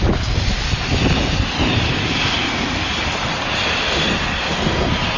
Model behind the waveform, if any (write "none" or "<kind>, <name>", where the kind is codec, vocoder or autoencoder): none